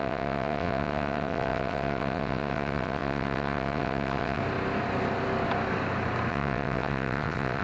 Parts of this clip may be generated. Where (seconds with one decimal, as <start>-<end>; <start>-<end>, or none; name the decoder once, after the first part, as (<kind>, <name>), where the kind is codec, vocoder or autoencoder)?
0.0-4.4 (vocoder, WaveNeXt); 6.3-7.6